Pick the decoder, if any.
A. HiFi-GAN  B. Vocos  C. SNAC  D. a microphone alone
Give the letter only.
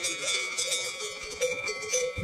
B